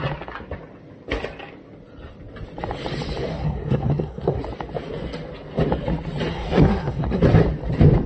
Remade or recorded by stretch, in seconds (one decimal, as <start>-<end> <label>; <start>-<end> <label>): 0.0-3.3 recorded; 3.3-4.4 remade; 4.4-6.3 recorded; 6.3-7.2 remade; 7.2-8.1 recorded